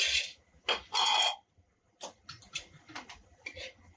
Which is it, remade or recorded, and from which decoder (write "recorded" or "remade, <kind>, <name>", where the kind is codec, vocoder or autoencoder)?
recorded